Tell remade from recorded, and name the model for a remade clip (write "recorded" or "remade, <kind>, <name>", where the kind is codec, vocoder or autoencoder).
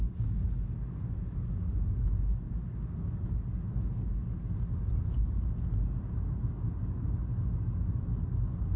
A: recorded